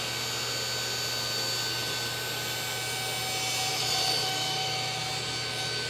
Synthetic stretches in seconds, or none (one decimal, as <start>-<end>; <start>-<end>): 3.7-5.0